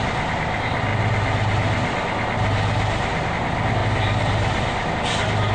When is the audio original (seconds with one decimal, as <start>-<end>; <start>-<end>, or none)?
0.0-3.8; 4.9-5.5